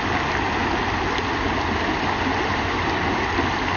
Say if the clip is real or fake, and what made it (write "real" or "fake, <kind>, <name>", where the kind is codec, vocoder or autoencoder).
real